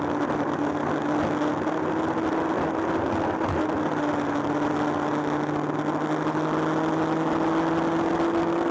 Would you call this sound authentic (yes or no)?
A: yes